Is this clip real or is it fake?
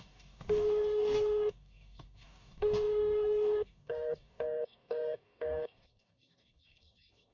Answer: fake